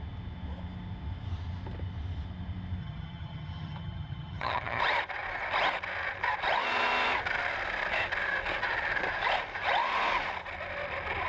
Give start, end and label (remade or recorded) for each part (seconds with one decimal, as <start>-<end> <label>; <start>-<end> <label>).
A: 0.0-2.8 recorded; 2.8-4.8 remade; 4.8-11.3 recorded